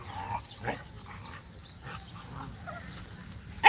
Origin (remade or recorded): recorded